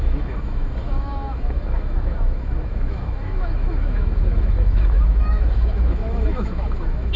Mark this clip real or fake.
fake